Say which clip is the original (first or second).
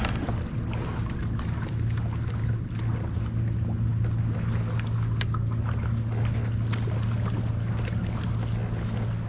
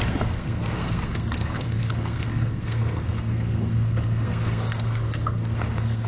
first